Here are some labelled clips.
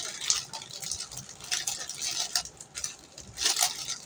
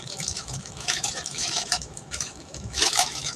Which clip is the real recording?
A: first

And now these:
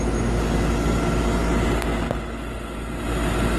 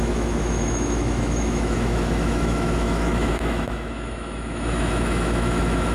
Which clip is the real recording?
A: first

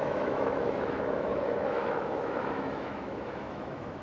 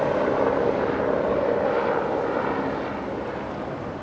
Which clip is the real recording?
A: second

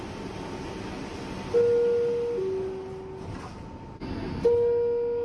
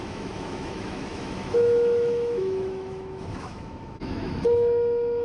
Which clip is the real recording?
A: first